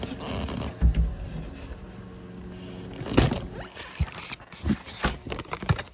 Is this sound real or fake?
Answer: real